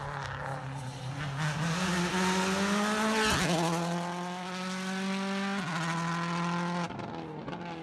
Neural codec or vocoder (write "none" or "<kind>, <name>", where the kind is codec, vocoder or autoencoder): none